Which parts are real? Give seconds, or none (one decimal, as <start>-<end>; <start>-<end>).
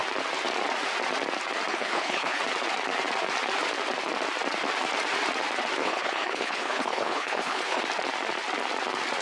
0.0-1.7; 2.4-5.8; 7.8-9.2